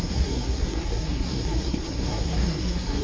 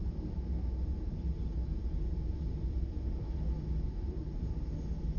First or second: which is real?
second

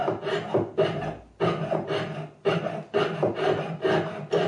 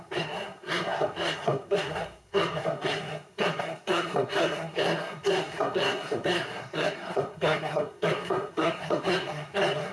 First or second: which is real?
first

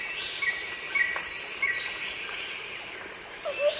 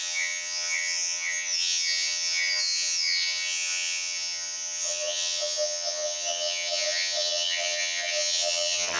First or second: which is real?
first